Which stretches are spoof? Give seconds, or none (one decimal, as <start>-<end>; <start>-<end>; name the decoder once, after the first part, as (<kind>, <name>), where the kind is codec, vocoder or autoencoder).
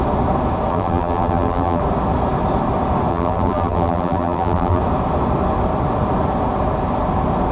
0.7-1.8 (vocoder, BigVGAN v2); 3.1-4.8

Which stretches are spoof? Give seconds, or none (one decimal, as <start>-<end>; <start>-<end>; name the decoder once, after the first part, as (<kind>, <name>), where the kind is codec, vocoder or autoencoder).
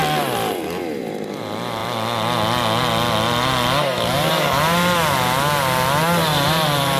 6.3-7.0 (vocoder, BigVGAN v2)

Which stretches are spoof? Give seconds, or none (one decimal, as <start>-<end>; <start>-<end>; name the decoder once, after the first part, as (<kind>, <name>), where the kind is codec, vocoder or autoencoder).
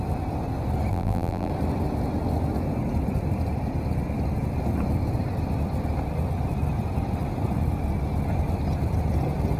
0.9-1.5 (vocoder, BigVGAN v2)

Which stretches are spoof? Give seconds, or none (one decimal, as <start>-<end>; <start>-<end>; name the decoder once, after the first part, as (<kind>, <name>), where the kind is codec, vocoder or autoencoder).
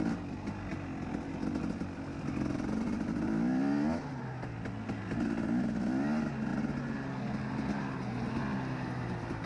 none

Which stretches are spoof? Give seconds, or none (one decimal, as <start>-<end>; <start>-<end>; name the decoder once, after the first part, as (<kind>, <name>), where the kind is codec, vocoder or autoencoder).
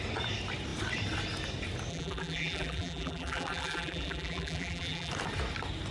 1.9-5.1 (vocoder, BigVGAN v2)